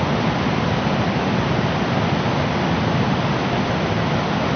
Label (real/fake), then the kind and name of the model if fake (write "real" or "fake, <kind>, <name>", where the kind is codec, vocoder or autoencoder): real